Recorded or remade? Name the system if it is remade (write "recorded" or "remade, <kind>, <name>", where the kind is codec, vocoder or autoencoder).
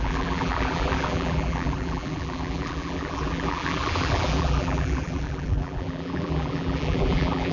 remade, vocoder, BigVGAN v2